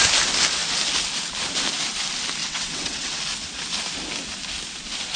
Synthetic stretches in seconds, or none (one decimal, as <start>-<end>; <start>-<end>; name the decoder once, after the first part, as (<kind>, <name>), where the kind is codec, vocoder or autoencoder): 2.4-3.2 (vocoder, WaveNeXt)